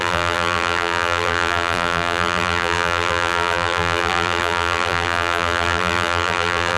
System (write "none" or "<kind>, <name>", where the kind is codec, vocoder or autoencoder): vocoder, BigVGAN v2